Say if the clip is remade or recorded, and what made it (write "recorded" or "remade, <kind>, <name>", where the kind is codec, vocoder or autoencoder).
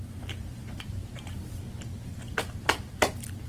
recorded